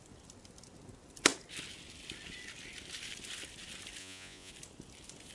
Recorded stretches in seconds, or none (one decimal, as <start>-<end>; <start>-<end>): 0.0-4.0; 4.5-5.3